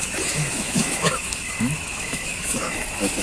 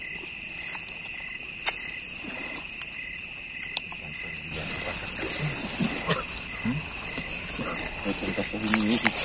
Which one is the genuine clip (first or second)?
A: second